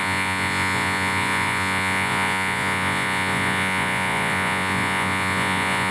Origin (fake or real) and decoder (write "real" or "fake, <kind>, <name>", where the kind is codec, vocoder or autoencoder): fake, vocoder, Vocos